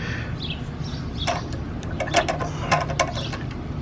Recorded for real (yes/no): yes